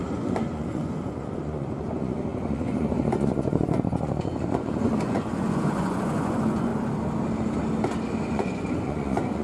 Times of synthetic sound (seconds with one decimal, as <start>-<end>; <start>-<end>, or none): 0.0-6.7; 8.3-9.4